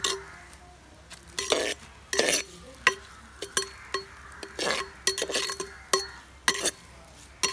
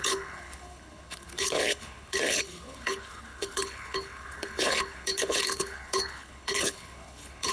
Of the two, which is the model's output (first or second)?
second